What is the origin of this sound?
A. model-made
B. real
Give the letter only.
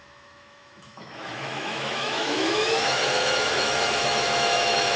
A